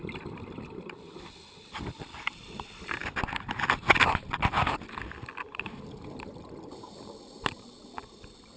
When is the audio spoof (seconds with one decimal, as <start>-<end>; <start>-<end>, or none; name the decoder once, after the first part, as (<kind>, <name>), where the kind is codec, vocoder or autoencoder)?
0.0-3.0 (vocoder, BigVGAN v2); 4.9-8.6